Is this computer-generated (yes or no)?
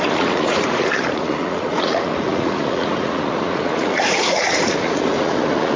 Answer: yes